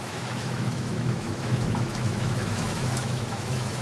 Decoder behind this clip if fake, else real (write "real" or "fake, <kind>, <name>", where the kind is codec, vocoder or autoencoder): fake, autoencoder, DAC-VAE